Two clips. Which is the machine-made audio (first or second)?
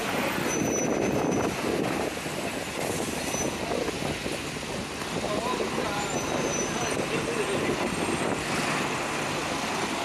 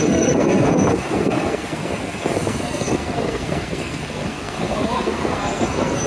second